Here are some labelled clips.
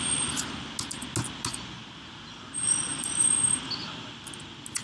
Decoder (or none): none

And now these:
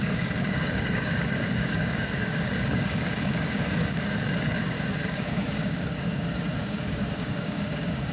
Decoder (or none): codec, DAC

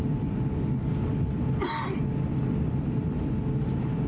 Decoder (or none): none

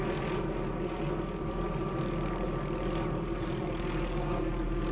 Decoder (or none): none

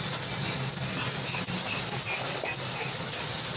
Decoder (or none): none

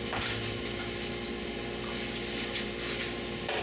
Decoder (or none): none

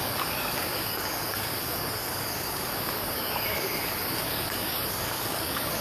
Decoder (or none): codec, DAC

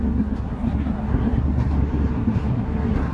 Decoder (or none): codec, SNAC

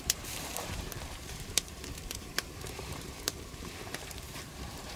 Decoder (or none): vocoder, BigVGAN v2